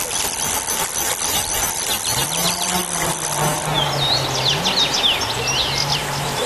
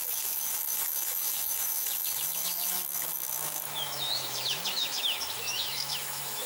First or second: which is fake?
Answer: second